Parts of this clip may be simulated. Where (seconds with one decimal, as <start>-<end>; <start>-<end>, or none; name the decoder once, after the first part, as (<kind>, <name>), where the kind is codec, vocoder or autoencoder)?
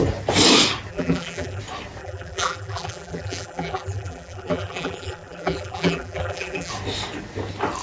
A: 0.9-1.6 (vocoder, BigVGAN v2); 2.0-6.7